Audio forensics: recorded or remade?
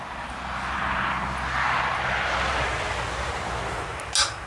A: recorded